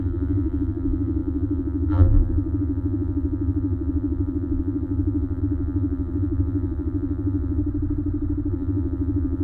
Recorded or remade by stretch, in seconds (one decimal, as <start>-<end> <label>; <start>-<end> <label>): 0.0-7.6 remade; 7.6-8.5 recorded; 8.5-9.4 remade